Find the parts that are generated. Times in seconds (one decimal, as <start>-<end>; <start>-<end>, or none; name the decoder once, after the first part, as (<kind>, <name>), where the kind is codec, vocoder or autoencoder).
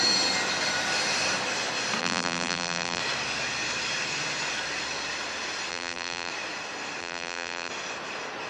2.0-3.0 (vocoder, BigVGAN v2); 5.7-6.3; 7.0-7.7